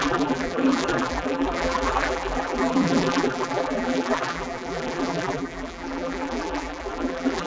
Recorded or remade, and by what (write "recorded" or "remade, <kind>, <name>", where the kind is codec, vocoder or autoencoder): remade, vocoder, BigVGAN v2